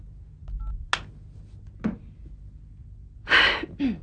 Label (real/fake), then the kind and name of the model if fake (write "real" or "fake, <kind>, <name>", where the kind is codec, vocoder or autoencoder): real